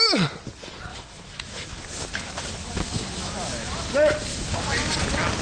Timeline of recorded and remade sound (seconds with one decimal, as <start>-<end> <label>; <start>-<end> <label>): 0.0-0.9 recorded; 0.9-3.9 remade; 3.9-4.3 recorded; 4.3-4.9 remade; 4.9-5.4 recorded

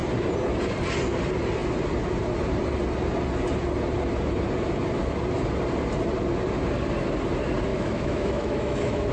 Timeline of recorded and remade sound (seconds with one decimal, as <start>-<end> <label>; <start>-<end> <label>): 0.0-7.7 recorded; 7.7-9.1 remade

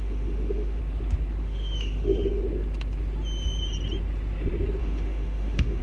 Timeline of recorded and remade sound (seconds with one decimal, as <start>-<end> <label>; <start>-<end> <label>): 0.0-0.8 remade; 0.8-1.4 recorded; 1.4-2.4 remade; 2.4-4.8 recorded; 4.8-5.8 remade

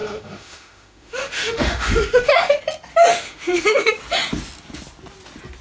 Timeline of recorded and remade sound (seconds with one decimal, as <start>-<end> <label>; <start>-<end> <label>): 0.0-2.6 remade; 2.6-3.1 recorded; 3.1-3.9 remade; 3.9-5.6 recorded

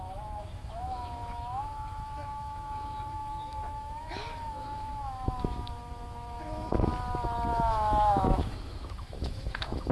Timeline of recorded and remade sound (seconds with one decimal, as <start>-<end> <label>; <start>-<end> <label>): 0.0-6.9 remade; 6.9-7.5 recorded; 7.5-9.9 remade

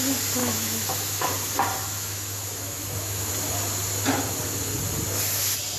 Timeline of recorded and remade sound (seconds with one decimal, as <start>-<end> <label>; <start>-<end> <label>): 0.0-0.4 recorded; 0.4-1.3 remade; 1.3-1.8 recorded; 1.8-3.3 remade; 3.3-5.8 recorded

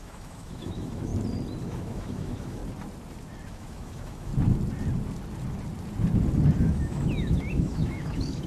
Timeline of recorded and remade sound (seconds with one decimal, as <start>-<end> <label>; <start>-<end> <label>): 0.0-1.1 remade; 1.1-1.6 recorded; 1.6-2.6 remade; 2.6-3.5 recorded; 3.5-4.3 remade; 4.3-6.6 recorded; 6.6-8.5 remade